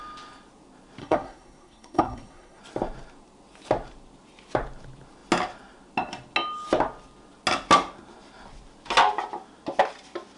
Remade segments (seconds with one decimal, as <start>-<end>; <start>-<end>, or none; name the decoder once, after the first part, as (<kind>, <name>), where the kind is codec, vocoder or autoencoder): 1.0-2.6 (codec, SNAC)